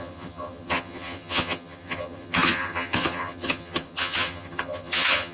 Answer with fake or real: fake